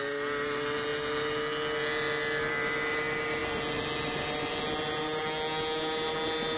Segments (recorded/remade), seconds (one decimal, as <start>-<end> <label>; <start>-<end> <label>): 0.0-6.6 recorded